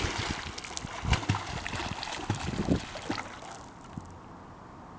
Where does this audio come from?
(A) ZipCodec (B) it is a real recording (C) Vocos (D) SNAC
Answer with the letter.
B